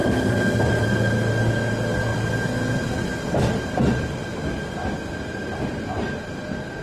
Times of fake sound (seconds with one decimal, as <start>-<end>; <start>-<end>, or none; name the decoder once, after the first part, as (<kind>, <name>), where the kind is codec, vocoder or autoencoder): none